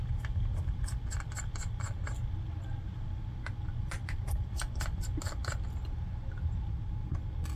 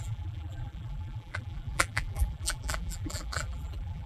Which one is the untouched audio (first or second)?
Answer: first